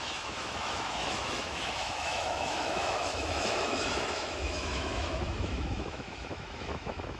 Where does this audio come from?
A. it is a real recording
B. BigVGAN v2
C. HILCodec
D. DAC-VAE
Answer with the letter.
D